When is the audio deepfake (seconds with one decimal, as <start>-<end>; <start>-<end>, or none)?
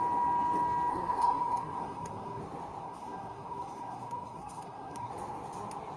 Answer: 0.9-2.4; 2.8-5.1